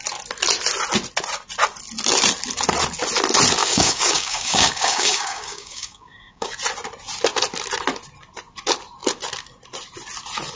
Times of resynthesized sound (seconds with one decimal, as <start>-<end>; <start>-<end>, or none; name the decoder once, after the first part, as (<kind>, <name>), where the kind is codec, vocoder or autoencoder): 3.6-6.5 (codec, DAC)